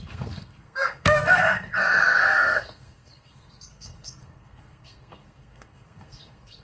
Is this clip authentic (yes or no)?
no